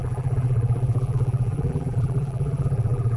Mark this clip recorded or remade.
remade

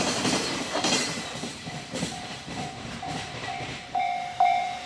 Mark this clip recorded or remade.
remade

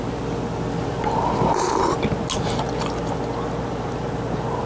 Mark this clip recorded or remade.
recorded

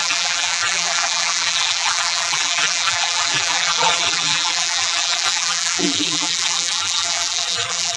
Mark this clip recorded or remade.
remade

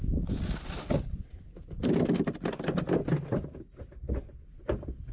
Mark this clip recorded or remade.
recorded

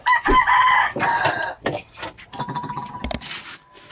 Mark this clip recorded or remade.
remade